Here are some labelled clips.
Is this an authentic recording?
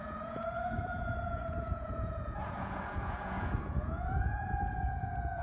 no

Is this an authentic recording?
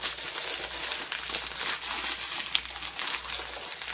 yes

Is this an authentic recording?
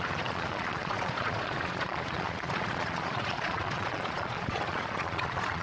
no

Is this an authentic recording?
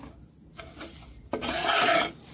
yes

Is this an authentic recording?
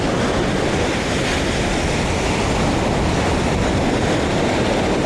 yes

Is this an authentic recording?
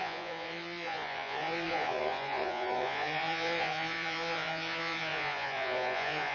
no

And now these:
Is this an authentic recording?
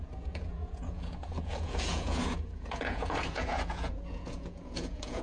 no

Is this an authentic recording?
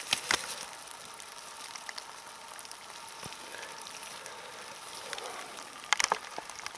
yes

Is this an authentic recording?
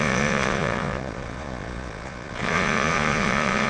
no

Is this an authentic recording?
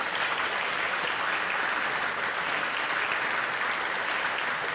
yes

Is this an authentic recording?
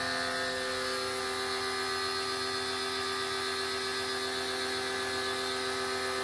yes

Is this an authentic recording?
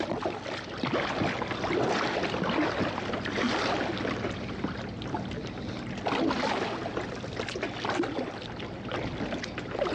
yes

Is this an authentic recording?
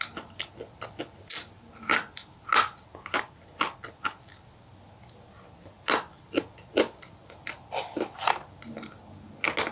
yes